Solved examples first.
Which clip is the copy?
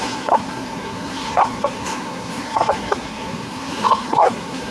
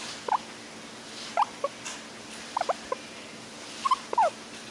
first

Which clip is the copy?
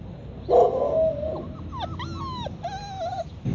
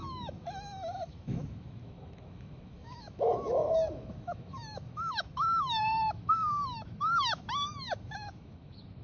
second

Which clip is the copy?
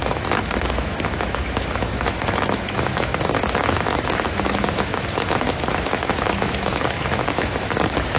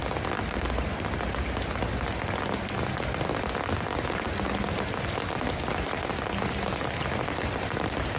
first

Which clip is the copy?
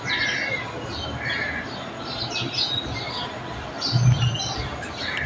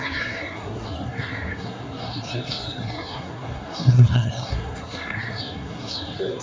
second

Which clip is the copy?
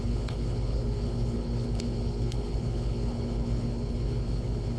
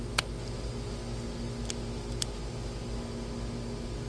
first